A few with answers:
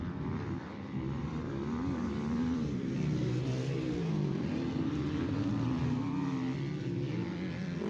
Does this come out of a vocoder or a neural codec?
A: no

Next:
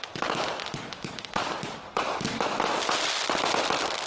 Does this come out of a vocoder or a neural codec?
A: no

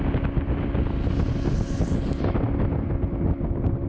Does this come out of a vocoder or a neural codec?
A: no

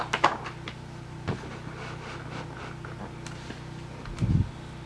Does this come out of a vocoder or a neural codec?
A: no